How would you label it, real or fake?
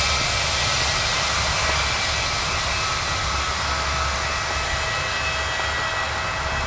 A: real